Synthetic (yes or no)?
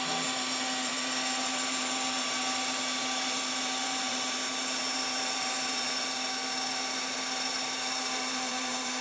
yes